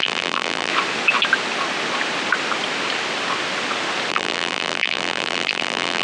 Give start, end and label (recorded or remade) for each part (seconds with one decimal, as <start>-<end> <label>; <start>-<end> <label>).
0.0-0.7 remade; 0.7-4.1 recorded; 4.1-6.0 remade